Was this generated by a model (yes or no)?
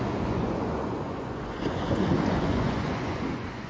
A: yes